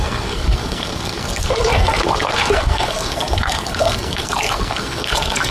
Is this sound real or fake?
fake